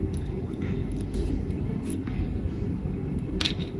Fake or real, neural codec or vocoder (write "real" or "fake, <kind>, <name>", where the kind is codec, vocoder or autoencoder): fake, codec, SNAC